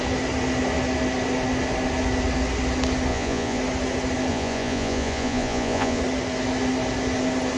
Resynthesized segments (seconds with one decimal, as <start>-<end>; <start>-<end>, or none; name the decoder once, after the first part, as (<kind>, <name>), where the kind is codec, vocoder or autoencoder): 3.1-3.6 (vocoder, Vocos); 4.3-6.0